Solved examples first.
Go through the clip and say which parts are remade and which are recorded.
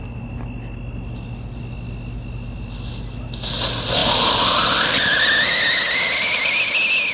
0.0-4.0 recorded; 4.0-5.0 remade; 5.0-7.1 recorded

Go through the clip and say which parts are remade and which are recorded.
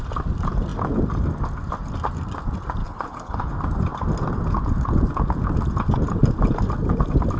0.0-2.8 recorded; 2.8-3.5 remade; 3.5-7.4 recorded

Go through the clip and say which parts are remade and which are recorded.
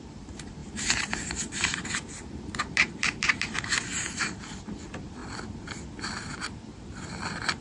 0.0-5.2 remade; 5.2-7.6 recorded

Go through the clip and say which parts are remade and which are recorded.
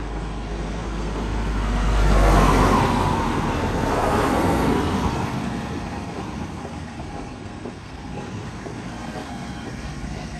0.0-10.4 remade